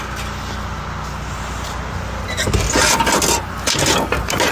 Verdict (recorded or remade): recorded